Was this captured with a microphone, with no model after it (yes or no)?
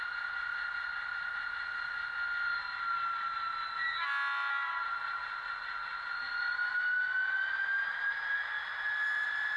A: yes